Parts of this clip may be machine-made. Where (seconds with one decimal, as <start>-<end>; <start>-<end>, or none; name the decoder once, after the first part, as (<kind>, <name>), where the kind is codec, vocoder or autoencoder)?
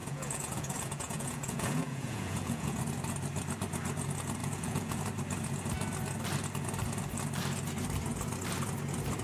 0.0-2.8 (vocoder, Vocos); 4.4-5.0